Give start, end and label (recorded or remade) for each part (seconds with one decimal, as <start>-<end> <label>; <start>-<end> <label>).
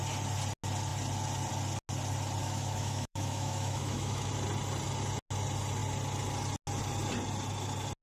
0.0-2.4 recorded; 2.4-4.3 remade; 4.3-8.0 recorded